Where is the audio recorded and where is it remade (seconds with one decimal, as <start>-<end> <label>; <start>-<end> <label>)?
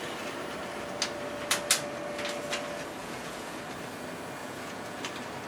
0.0-3.0 recorded; 3.0-3.6 remade; 3.6-4.4 recorded; 4.4-5.0 remade; 5.0-5.5 recorded